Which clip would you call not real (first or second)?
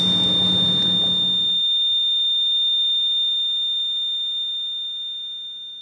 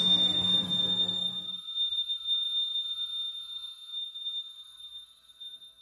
second